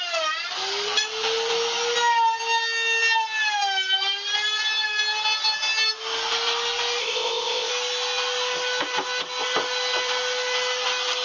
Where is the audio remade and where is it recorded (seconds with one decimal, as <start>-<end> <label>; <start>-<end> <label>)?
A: 0.0-7.0 recorded; 7.0-7.7 remade; 7.7-11.2 recorded